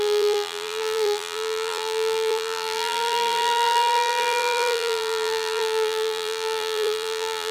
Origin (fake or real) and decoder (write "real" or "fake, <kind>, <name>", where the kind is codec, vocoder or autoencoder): fake, vocoder, BigVGAN v2